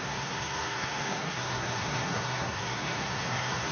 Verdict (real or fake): fake